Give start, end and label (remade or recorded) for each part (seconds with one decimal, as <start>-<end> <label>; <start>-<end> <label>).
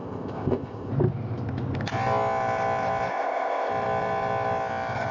0.0-0.9 remade; 0.9-3.1 recorded; 3.1-3.7 remade; 3.7-5.1 recorded